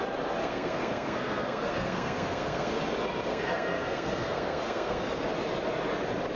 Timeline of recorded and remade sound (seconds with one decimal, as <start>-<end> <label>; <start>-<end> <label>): 0.0-0.4 recorded; 0.4-2.8 remade; 2.8-3.3 recorded; 3.3-5.0 remade; 5.0-6.4 recorded